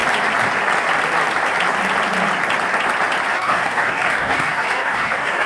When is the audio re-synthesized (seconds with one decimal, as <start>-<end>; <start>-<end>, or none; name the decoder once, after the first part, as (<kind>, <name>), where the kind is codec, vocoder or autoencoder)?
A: 3.3-5.5 (codec, DAC)